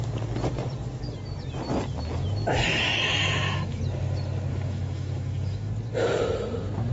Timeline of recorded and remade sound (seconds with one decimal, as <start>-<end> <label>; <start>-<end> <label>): 0.0-2.7 recorded; 2.7-3.8 remade; 3.8-4.5 recorded; 4.5-5.7 remade; 5.7-6.9 recorded